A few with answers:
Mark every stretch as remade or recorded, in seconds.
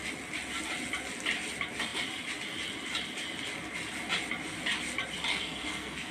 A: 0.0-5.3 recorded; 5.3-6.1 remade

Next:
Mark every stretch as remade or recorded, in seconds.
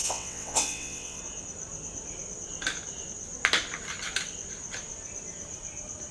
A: 0.0-1.2 remade; 1.2-6.1 recorded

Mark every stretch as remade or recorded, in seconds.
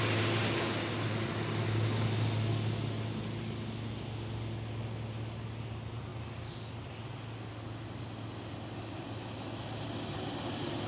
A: 0.0-10.9 recorded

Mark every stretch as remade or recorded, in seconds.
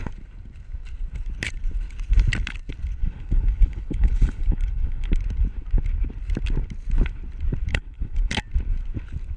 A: 0.0-3.0 recorded; 3.0-5.1 remade; 5.1-7.7 recorded; 7.7-8.3 remade; 8.3-9.4 recorded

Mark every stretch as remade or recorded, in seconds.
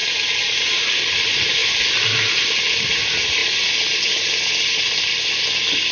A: 0.0-0.8 remade; 0.8-1.6 recorded; 1.6-3.0 remade; 3.0-5.9 recorded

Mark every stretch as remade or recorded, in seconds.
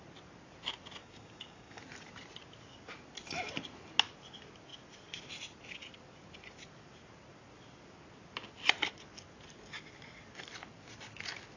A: 0.0-1.0 recorded; 1.0-1.8 remade; 1.8-11.6 recorded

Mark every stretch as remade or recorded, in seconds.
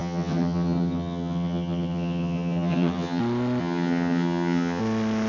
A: 0.0-3.2 remade; 3.2-3.6 recorded; 3.6-4.8 remade; 4.8-5.3 recorded